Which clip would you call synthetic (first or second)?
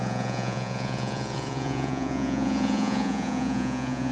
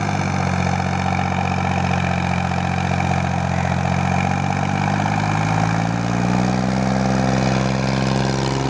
first